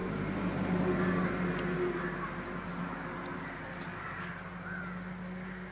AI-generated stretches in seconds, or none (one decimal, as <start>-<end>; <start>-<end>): none